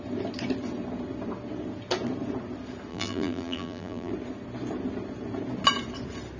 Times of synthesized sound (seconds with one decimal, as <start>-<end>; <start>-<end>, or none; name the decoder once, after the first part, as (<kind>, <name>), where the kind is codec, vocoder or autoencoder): 2.9-4.1 (vocoder, BigVGAN v2)